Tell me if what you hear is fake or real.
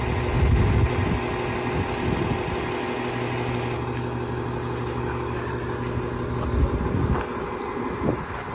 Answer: real